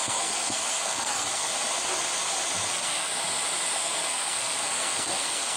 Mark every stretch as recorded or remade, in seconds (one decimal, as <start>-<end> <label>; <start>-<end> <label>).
0.0-1.5 remade; 1.5-2.7 recorded; 2.7-3.1 remade; 3.1-3.8 recorded; 3.8-5.6 remade